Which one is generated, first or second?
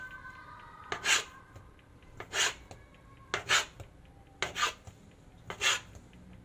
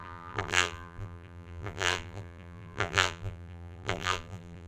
second